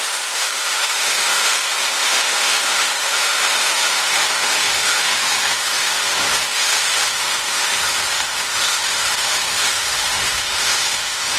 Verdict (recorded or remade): remade